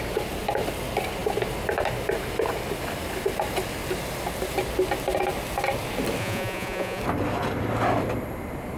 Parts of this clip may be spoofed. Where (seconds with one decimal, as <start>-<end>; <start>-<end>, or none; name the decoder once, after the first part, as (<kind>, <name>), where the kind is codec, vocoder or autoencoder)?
6.2-7.0 (vocoder, Vocos)